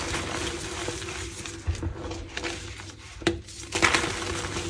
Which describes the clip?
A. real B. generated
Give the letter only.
A